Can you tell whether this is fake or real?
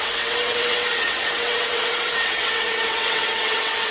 fake